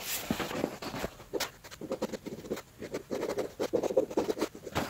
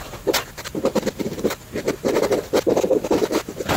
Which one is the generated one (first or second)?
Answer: second